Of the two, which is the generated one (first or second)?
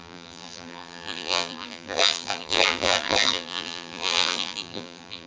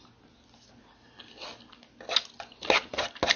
first